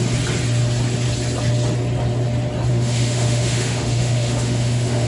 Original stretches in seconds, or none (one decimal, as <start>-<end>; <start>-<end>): 0.0-2.7